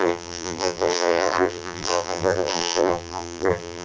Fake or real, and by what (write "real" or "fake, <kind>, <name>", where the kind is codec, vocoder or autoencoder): fake, vocoder, BigVGAN v2